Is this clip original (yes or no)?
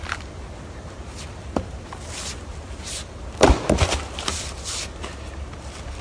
yes